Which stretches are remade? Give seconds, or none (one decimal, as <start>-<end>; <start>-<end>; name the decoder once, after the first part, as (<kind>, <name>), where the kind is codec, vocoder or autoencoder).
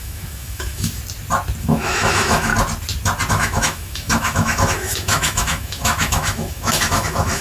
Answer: 0.0-1.0 (autoencoder, DAC-VAE); 1.6-2.5; 3.3-7.4